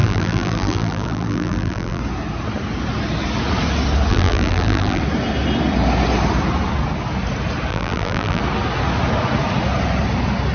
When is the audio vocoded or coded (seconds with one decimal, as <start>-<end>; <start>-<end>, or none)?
0.0-2.0; 4.1-5.0; 7.7-8.4